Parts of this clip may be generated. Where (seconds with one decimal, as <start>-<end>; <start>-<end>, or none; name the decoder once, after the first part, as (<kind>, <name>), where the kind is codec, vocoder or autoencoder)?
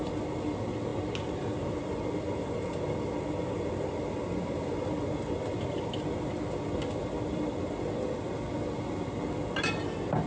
none